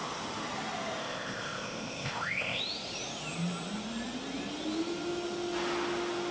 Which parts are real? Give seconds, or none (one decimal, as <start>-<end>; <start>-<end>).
0.0-1.0; 2.6-6.3